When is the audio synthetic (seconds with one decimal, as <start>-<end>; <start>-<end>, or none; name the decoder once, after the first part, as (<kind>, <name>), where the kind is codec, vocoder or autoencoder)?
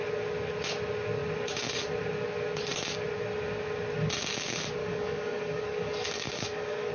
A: 4.8-6.9 (codec, DAC)